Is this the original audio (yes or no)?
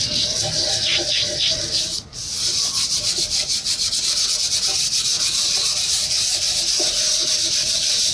yes